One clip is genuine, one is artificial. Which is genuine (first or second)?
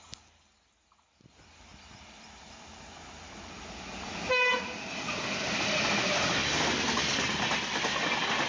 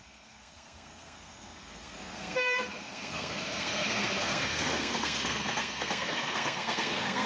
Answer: first